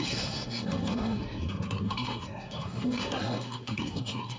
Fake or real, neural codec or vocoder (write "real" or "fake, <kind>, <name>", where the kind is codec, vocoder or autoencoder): fake, codec, SNAC